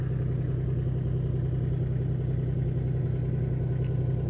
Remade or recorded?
recorded